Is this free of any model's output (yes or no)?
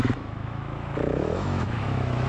no